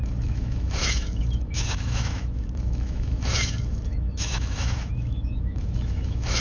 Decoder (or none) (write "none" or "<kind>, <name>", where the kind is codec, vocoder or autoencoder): autoencoder, DAC-VAE